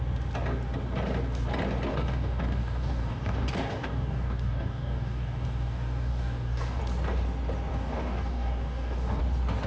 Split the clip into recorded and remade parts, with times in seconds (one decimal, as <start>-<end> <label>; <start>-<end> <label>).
0.0-1.9 recorded; 1.9-6.8 remade; 6.8-7.7 recorded; 7.7-9.2 remade; 9.2-9.7 recorded